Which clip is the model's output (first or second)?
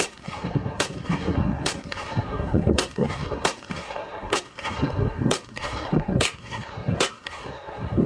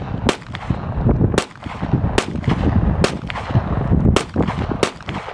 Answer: first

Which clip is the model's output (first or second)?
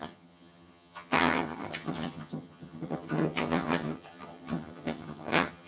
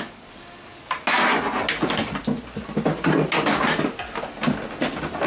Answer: first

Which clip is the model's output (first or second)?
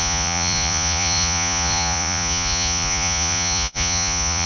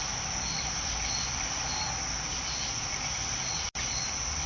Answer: first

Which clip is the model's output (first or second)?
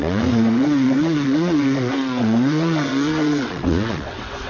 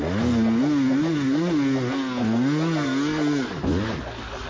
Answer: first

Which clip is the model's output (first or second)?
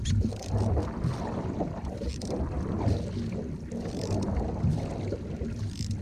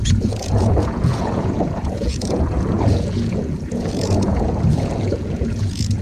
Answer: second